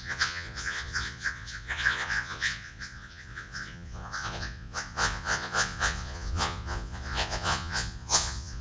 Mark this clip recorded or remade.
remade